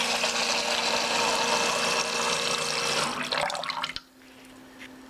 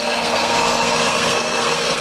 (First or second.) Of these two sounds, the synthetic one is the second